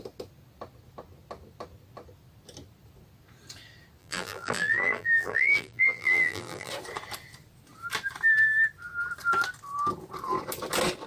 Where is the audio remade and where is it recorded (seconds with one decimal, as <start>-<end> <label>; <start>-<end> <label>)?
0.0-4.0 recorded; 4.0-6.7 remade; 6.7-11.1 recorded